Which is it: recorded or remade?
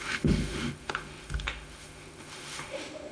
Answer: remade